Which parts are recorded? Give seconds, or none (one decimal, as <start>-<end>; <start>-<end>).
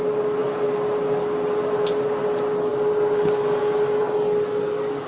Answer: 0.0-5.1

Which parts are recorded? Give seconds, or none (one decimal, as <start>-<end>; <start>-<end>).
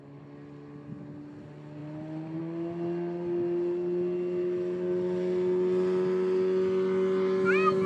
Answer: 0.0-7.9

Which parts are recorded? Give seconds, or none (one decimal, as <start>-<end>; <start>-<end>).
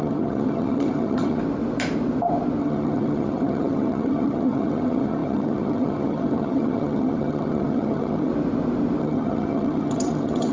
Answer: 1.4-2.6; 8.3-9.0